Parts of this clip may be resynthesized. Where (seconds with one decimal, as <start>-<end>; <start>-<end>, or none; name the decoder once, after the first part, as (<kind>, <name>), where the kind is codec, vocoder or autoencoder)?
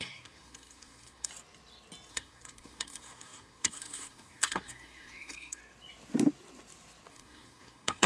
0.0-1.3 (codec, SNAC); 2.1-5.6; 7.1-8.1